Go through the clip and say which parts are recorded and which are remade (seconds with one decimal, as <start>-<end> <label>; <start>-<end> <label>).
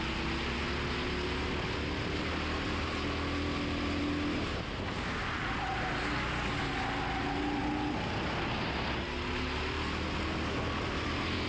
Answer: 0.0-11.5 recorded